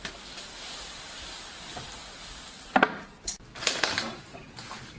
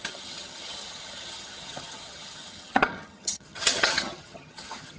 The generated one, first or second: second